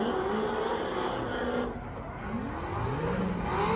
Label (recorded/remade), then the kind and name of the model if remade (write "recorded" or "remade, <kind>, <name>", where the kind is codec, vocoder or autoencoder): recorded